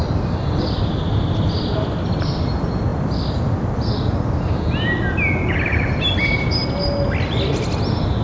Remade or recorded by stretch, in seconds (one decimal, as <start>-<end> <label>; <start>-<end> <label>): 0.0-8.2 recorded